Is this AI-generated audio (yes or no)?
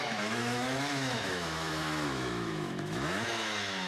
yes